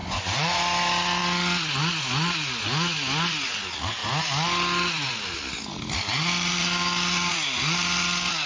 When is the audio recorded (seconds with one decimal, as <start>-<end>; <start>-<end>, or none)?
0.6-8.5

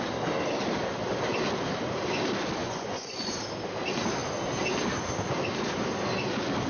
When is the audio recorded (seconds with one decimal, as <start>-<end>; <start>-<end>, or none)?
0.0-2.6; 3.4-6.7

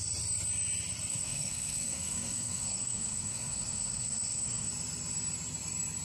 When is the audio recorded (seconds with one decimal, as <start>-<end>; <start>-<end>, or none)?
0.0-1.1; 4.7-6.0

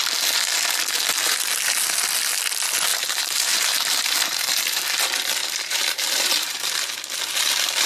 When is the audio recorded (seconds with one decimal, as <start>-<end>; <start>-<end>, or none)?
0.0-2.9; 4.8-5.4; 6.7-7.9

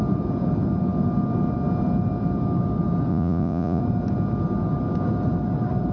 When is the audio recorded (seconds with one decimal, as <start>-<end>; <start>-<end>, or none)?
0.0-3.1; 3.8-5.9

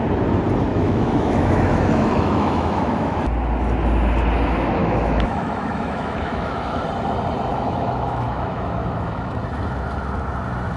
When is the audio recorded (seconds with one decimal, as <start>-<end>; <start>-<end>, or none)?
0.0-0.7; 3.2-4.8; 6.8-7.5; 9.4-10.8